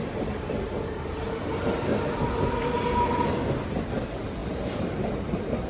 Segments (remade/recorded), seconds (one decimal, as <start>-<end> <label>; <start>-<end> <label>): 0.0-1.9 remade; 1.9-3.7 recorded; 3.7-5.7 remade